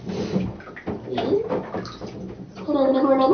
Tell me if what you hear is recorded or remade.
recorded